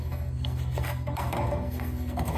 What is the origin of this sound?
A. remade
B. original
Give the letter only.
A